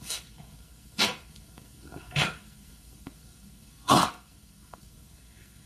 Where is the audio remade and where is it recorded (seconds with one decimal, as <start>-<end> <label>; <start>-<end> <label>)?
0.0-5.7 remade

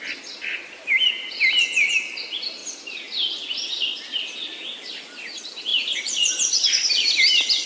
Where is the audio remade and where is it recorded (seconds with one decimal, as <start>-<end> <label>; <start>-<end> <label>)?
0.0-5.7 recorded; 5.7-6.9 remade; 6.9-7.7 recorded

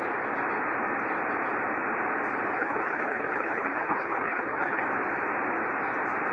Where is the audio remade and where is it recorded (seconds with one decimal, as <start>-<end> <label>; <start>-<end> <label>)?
0.0-2.6 recorded; 2.6-4.8 remade; 4.8-6.3 recorded

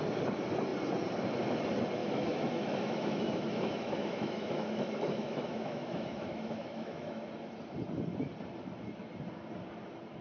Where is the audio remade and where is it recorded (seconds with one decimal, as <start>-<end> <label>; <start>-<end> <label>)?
0.0-2.0 recorded; 2.0-7.3 remade; 7.3-10.2 recorded